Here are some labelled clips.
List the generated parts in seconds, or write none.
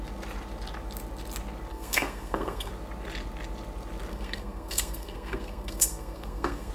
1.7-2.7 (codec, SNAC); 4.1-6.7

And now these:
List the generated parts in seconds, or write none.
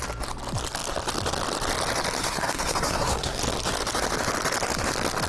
2.2-3.4 (codec, SNAC)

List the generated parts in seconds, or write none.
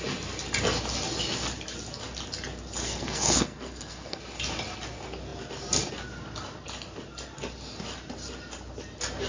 2.8-4.2 (codec, SNAC)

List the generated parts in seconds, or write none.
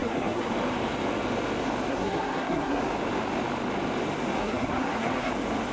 0.0-0.5 (codec, SNAC); 1.9-2.8; 4.4-5.3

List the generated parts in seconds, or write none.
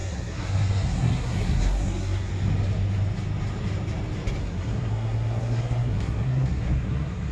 0.0-2.3 (codec, SNAC); 4.4-7.3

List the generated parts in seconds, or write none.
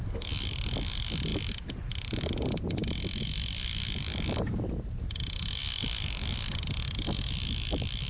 none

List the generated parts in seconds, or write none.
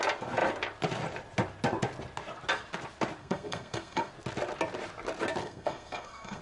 3.2-4.1 (codec, SNAC); 5.4-6.4